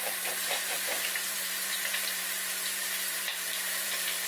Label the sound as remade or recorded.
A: remade